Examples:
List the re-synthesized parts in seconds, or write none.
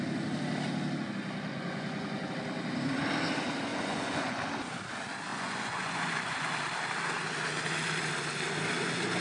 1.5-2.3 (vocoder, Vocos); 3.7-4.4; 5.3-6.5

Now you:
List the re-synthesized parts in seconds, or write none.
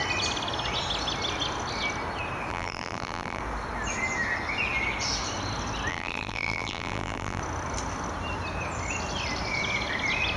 2.5-3.4 (vocoder, BigVGAN v2); 5.9-7.4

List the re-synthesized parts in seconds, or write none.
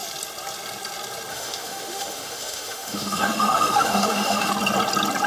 1.3-4.5 (autoencoder, DAC-VAE)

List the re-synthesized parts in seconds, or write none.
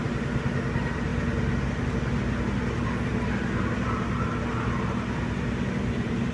none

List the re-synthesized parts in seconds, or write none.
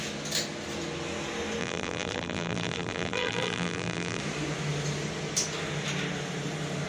1.6-4.2 (vocoder, BigVGAN v2)